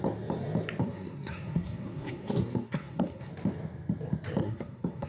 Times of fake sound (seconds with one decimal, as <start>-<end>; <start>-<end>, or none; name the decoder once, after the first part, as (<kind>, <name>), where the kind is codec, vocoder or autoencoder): 0.8-3.3 (codec, SNAC); 4.4-5.1

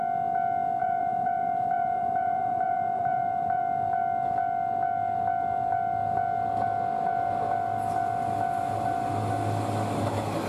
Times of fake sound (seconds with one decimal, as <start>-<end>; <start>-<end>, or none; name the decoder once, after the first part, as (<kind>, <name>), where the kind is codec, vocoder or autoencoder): 0.8-3.6 (vocoder, BigVGAN v2)

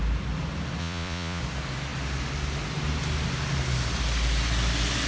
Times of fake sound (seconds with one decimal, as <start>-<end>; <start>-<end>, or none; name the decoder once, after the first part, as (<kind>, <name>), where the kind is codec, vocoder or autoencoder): 0.8-1.4 (vocoder, Vocos)

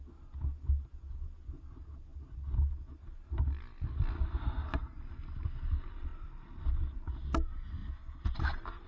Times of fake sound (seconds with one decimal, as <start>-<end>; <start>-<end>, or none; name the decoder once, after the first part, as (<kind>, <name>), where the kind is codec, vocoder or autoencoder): 7.8-8.9 (vocoder, BigVGAN v2)

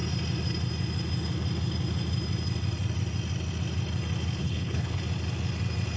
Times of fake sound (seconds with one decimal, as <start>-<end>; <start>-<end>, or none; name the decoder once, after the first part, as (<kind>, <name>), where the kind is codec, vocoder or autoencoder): 4.4-5.0 (codec, HILCodec)

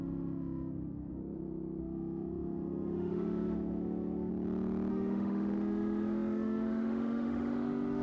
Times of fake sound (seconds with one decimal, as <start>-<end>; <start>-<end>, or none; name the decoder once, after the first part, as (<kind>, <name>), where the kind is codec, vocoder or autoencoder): 0.0-1.2 (autoencoder, DAC-VAE); 1.8-4.3; 4.9-8.0

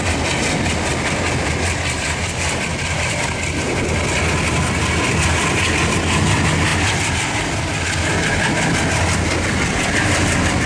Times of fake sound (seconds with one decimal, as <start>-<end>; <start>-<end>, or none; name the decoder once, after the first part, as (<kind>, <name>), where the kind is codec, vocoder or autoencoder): 2.7-3.5 (vocoder, BigVGAN v2)